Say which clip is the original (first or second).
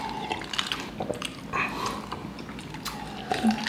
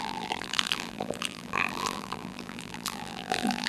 first